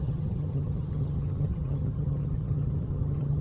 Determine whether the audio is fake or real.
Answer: fake